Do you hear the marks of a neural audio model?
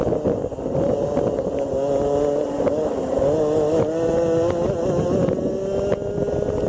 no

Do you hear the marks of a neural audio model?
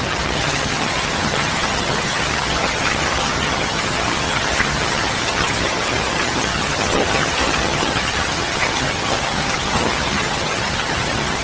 yes